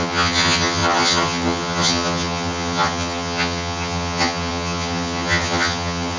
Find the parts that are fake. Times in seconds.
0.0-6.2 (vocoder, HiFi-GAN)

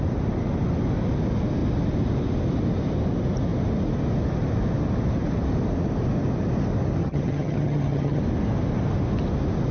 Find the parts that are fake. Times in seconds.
7.0-8.2 (vocoder, HiFi-GAN)

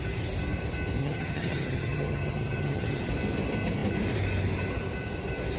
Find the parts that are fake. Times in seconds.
1.0-3.1 (vocoder, HiFi-GAN)

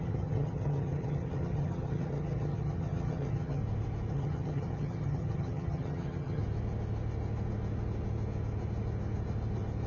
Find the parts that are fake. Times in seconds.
0.0-3.6 (vocoder, HiFi-GAN); 4.1-6.4